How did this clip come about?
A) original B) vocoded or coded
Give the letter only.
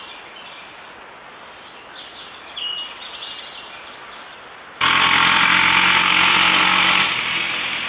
A